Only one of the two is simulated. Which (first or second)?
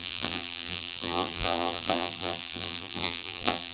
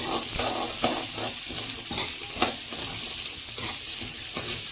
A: first